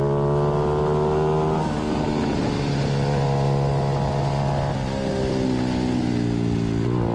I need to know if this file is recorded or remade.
recorded